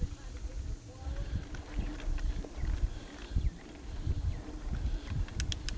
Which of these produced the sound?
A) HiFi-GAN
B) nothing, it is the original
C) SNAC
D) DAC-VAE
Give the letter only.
B